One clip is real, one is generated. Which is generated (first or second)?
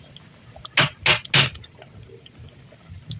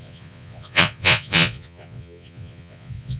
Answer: second